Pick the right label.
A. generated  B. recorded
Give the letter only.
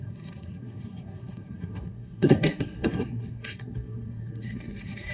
A